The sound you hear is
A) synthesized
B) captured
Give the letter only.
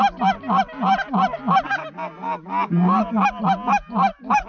B